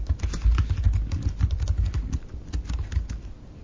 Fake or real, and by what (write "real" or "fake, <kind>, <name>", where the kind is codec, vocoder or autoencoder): real